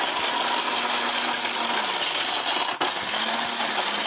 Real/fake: real